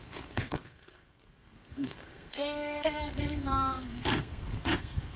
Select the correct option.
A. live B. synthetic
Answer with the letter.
B